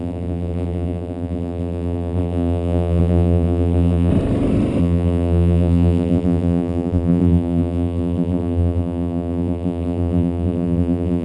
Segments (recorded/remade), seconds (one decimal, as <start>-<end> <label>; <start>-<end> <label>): 0.0-4.1 remade; 4.1-4.8 recorded; 4.8-11.2 remade